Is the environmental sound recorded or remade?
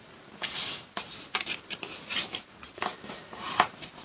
remade